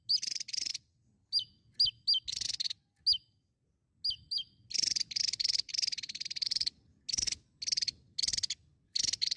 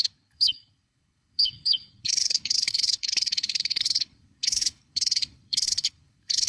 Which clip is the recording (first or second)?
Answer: first